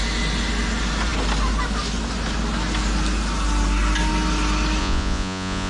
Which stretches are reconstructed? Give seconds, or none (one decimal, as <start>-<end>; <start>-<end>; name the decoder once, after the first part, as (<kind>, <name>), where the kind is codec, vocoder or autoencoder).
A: 4.8-5.7 (vocoder, Vocos)